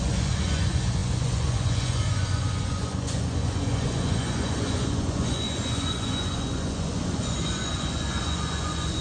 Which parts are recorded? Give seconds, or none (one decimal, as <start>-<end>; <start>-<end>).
none